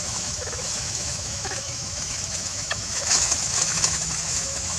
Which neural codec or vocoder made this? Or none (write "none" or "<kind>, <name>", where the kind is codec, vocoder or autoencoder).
autoencoder, DAC-VAE